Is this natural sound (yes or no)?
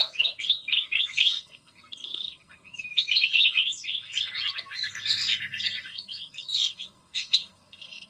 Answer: no